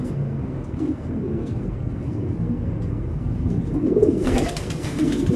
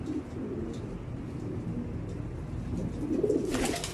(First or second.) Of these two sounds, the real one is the second